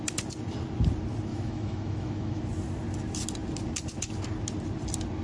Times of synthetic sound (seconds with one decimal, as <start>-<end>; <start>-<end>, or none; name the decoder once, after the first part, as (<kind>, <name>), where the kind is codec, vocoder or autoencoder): 1.3-2.4 (autoencoder, DAC-VAE)